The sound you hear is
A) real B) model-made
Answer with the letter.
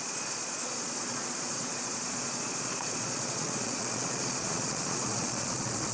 B